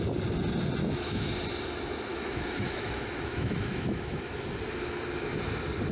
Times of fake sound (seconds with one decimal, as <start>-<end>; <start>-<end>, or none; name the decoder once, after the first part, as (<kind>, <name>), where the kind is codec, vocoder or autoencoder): 0.8-1.3 (autoencoder, DAC-VAE); 2.1-4.4